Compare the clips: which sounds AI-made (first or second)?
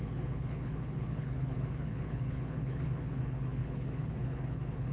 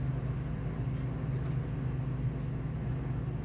first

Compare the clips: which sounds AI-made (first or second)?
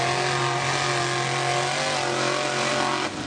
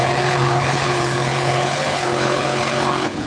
second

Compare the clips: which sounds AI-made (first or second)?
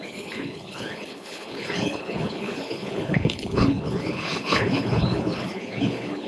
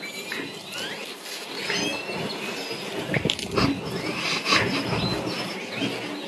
first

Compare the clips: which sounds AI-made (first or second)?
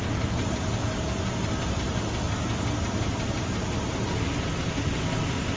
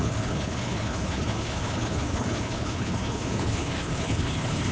second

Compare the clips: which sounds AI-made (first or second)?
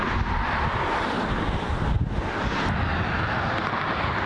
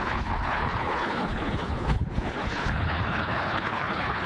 second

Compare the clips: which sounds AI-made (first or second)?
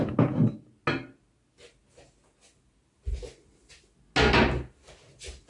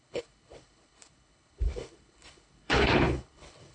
second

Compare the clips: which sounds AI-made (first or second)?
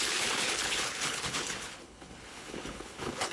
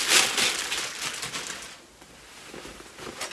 first